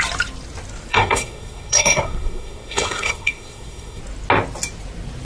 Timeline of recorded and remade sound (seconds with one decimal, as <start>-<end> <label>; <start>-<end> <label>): 0.0-0.9 recorded; 0.9-4.0 remade; 4.0-5.2 recorded